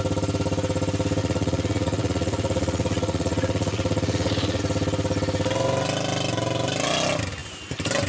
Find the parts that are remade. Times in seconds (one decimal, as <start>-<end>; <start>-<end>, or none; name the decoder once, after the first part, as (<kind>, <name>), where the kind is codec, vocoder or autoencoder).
1.2-4.6 (vocoder, Vocos)